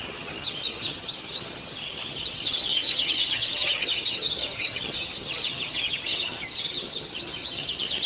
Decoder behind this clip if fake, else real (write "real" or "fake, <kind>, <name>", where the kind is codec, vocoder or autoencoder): fake, vocoder, HiFi-GAN